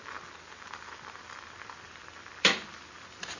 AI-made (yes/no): no